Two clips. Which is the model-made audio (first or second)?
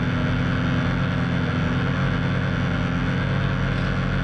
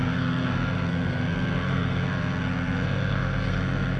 second